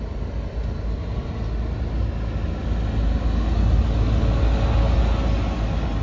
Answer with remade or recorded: recorded